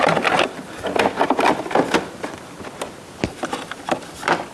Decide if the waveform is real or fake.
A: fake